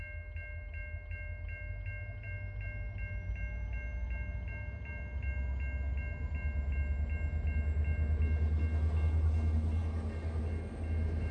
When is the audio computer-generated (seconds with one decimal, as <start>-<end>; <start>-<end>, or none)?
none